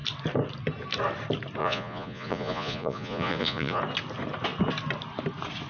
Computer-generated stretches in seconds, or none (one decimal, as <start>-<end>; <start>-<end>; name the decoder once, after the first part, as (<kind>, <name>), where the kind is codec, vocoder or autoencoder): 1.6-3.8 (vocoder, Vocos)

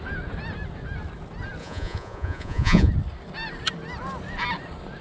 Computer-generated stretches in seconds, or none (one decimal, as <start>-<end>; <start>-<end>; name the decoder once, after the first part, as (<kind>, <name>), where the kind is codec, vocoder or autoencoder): 1.6-2.9 (vocoder, Vocos)

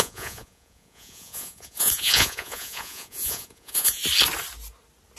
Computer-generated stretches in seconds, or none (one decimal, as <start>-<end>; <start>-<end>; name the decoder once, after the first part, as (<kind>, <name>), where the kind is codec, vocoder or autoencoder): 0.0-4.0 (vocoder, Vocos)

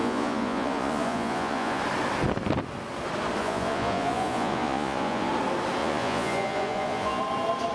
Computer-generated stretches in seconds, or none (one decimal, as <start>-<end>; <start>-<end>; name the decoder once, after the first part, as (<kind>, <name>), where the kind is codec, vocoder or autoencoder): 0.0-1.8 (vocoder, Vocos); 3.4-5.3; 5.8-7.2

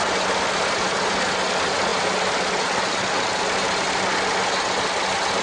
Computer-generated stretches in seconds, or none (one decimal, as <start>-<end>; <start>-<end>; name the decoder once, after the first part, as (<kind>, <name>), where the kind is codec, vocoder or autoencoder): none